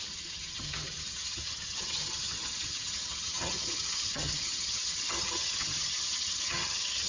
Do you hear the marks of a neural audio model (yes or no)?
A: yes